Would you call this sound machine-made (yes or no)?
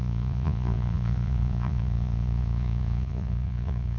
yes